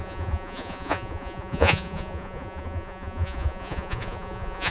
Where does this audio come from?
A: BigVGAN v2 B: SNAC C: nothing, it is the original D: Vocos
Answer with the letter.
D